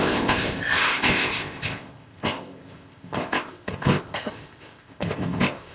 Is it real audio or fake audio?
fake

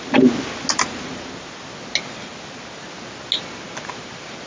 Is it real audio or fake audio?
real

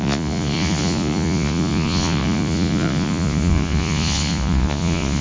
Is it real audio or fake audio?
fake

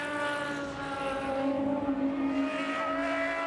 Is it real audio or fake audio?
real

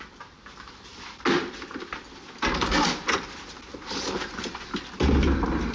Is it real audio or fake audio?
real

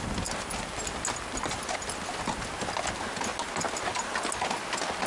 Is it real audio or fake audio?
real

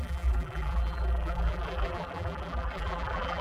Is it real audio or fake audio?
fake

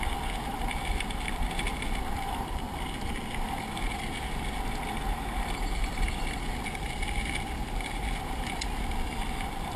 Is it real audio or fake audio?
real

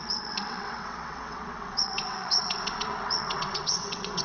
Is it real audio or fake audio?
fake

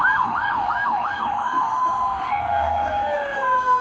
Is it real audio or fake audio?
fake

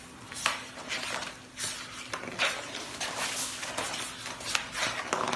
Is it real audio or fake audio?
real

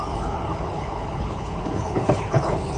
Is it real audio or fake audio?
fake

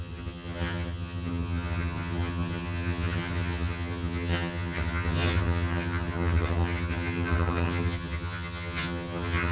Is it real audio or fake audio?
fake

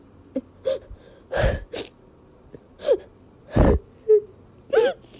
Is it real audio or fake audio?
real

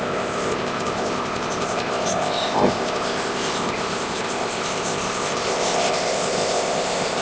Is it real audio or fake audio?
fake